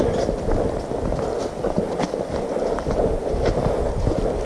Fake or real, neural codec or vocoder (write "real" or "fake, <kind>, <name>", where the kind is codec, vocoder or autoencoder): real